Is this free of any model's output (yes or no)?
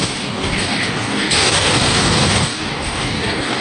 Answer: no